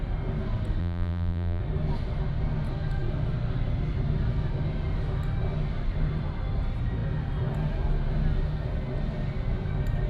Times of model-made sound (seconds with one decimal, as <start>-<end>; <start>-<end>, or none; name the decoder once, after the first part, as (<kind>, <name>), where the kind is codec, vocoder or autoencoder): 0.8-1.6 (vocoder, BigVGAN v2)